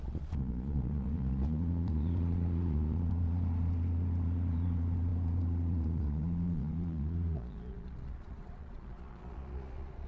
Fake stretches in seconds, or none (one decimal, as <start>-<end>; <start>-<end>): 0.0-10.1